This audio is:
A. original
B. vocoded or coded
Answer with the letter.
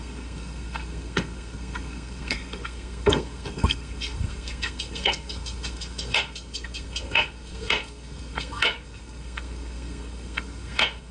B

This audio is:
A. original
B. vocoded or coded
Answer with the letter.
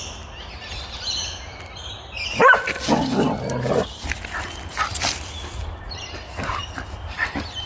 A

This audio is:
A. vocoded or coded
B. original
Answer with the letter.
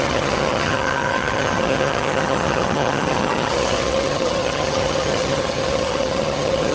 A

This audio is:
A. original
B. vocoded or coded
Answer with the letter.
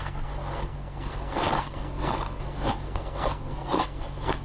B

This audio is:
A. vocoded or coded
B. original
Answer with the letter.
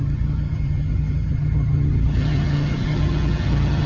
A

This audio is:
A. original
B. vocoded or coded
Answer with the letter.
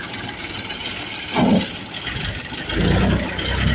A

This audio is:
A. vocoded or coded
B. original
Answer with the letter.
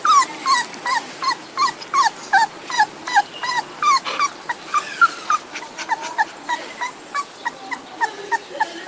B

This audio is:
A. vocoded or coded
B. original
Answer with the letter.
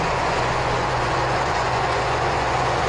A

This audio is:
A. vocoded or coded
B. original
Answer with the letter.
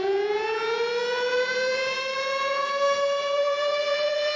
A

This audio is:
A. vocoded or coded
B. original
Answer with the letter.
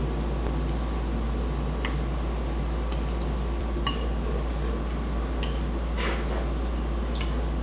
B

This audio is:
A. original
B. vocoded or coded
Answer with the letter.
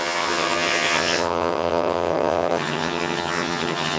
B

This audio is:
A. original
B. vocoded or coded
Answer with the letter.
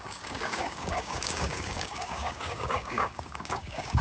B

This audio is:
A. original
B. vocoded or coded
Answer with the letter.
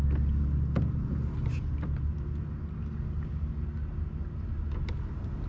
A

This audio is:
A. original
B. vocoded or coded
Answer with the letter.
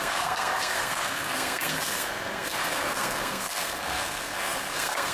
B